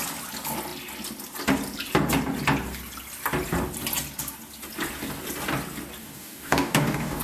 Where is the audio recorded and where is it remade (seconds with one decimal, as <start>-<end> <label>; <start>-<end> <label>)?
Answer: 0.0-6.0 recorded; 6.0-7.2 remade